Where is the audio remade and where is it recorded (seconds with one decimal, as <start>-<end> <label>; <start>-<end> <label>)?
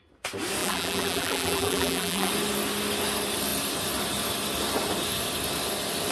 0.0-0.6 recorded; 0.6-2.3 remade; 2.3-6.1 recorded